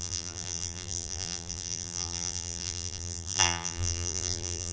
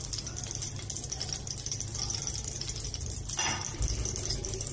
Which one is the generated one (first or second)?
first